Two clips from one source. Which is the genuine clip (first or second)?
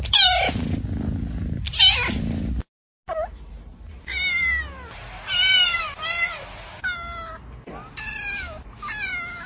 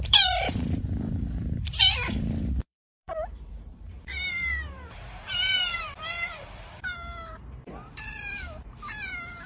first